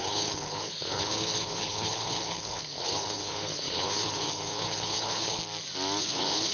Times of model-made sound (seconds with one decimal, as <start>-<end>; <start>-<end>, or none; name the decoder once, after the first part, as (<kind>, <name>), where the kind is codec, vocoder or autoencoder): 0.0-5.4 (codec, HILCodec); 6.0-6.5